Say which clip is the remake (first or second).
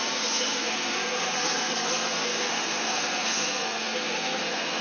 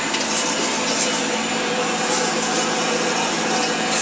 first